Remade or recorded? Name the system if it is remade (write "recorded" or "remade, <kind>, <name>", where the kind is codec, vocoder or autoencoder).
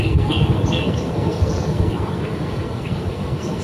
remade, codec, SNAC